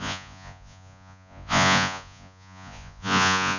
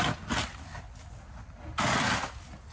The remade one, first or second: first